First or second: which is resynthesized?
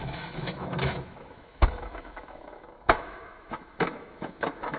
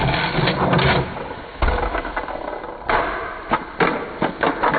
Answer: first